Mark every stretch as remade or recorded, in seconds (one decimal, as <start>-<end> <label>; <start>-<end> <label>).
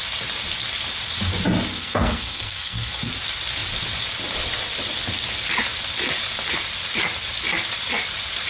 0.0-1.7 recorded; 1.7-3.1 remade; 3.1-8.5 recorded